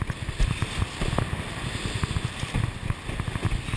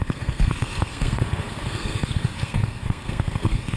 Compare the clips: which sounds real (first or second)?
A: first